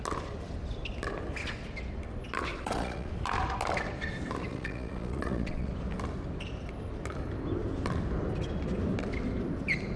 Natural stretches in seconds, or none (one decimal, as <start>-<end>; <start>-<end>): 0.0-2.5; 3.1-4.5; 5.7-10.0